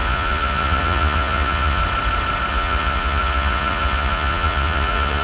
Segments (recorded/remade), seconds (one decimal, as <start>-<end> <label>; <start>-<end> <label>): 0.0-1.8 remade; 1.8-2.5 recorded; 2.5-5.2 remade